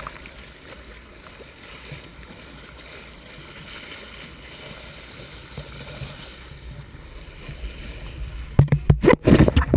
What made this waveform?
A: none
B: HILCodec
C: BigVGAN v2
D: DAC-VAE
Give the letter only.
A